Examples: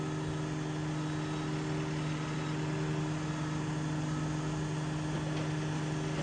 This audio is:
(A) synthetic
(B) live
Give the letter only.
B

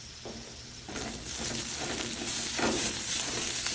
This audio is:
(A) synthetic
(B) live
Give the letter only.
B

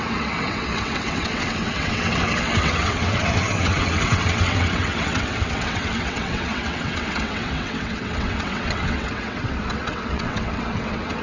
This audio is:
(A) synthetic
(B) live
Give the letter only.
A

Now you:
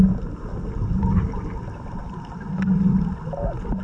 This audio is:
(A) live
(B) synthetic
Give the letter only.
A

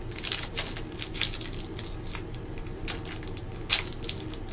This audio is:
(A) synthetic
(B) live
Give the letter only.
B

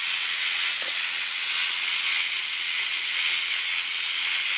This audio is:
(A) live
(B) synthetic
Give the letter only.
B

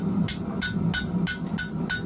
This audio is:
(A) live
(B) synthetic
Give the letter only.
A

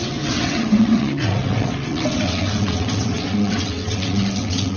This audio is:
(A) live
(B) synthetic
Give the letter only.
B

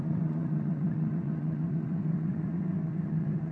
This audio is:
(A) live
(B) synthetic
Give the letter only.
B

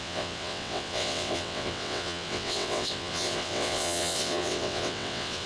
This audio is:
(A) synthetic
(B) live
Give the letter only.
A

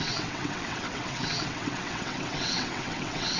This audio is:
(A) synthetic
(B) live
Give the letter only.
A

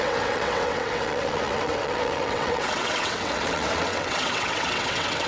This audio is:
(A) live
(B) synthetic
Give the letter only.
B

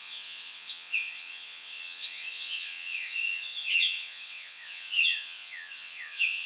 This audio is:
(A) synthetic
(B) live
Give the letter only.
A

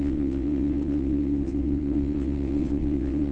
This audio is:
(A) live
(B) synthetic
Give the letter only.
B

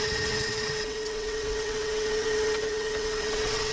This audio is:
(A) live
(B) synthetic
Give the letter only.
B